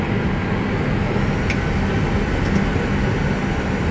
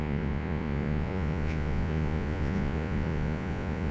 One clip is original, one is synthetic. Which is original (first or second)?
first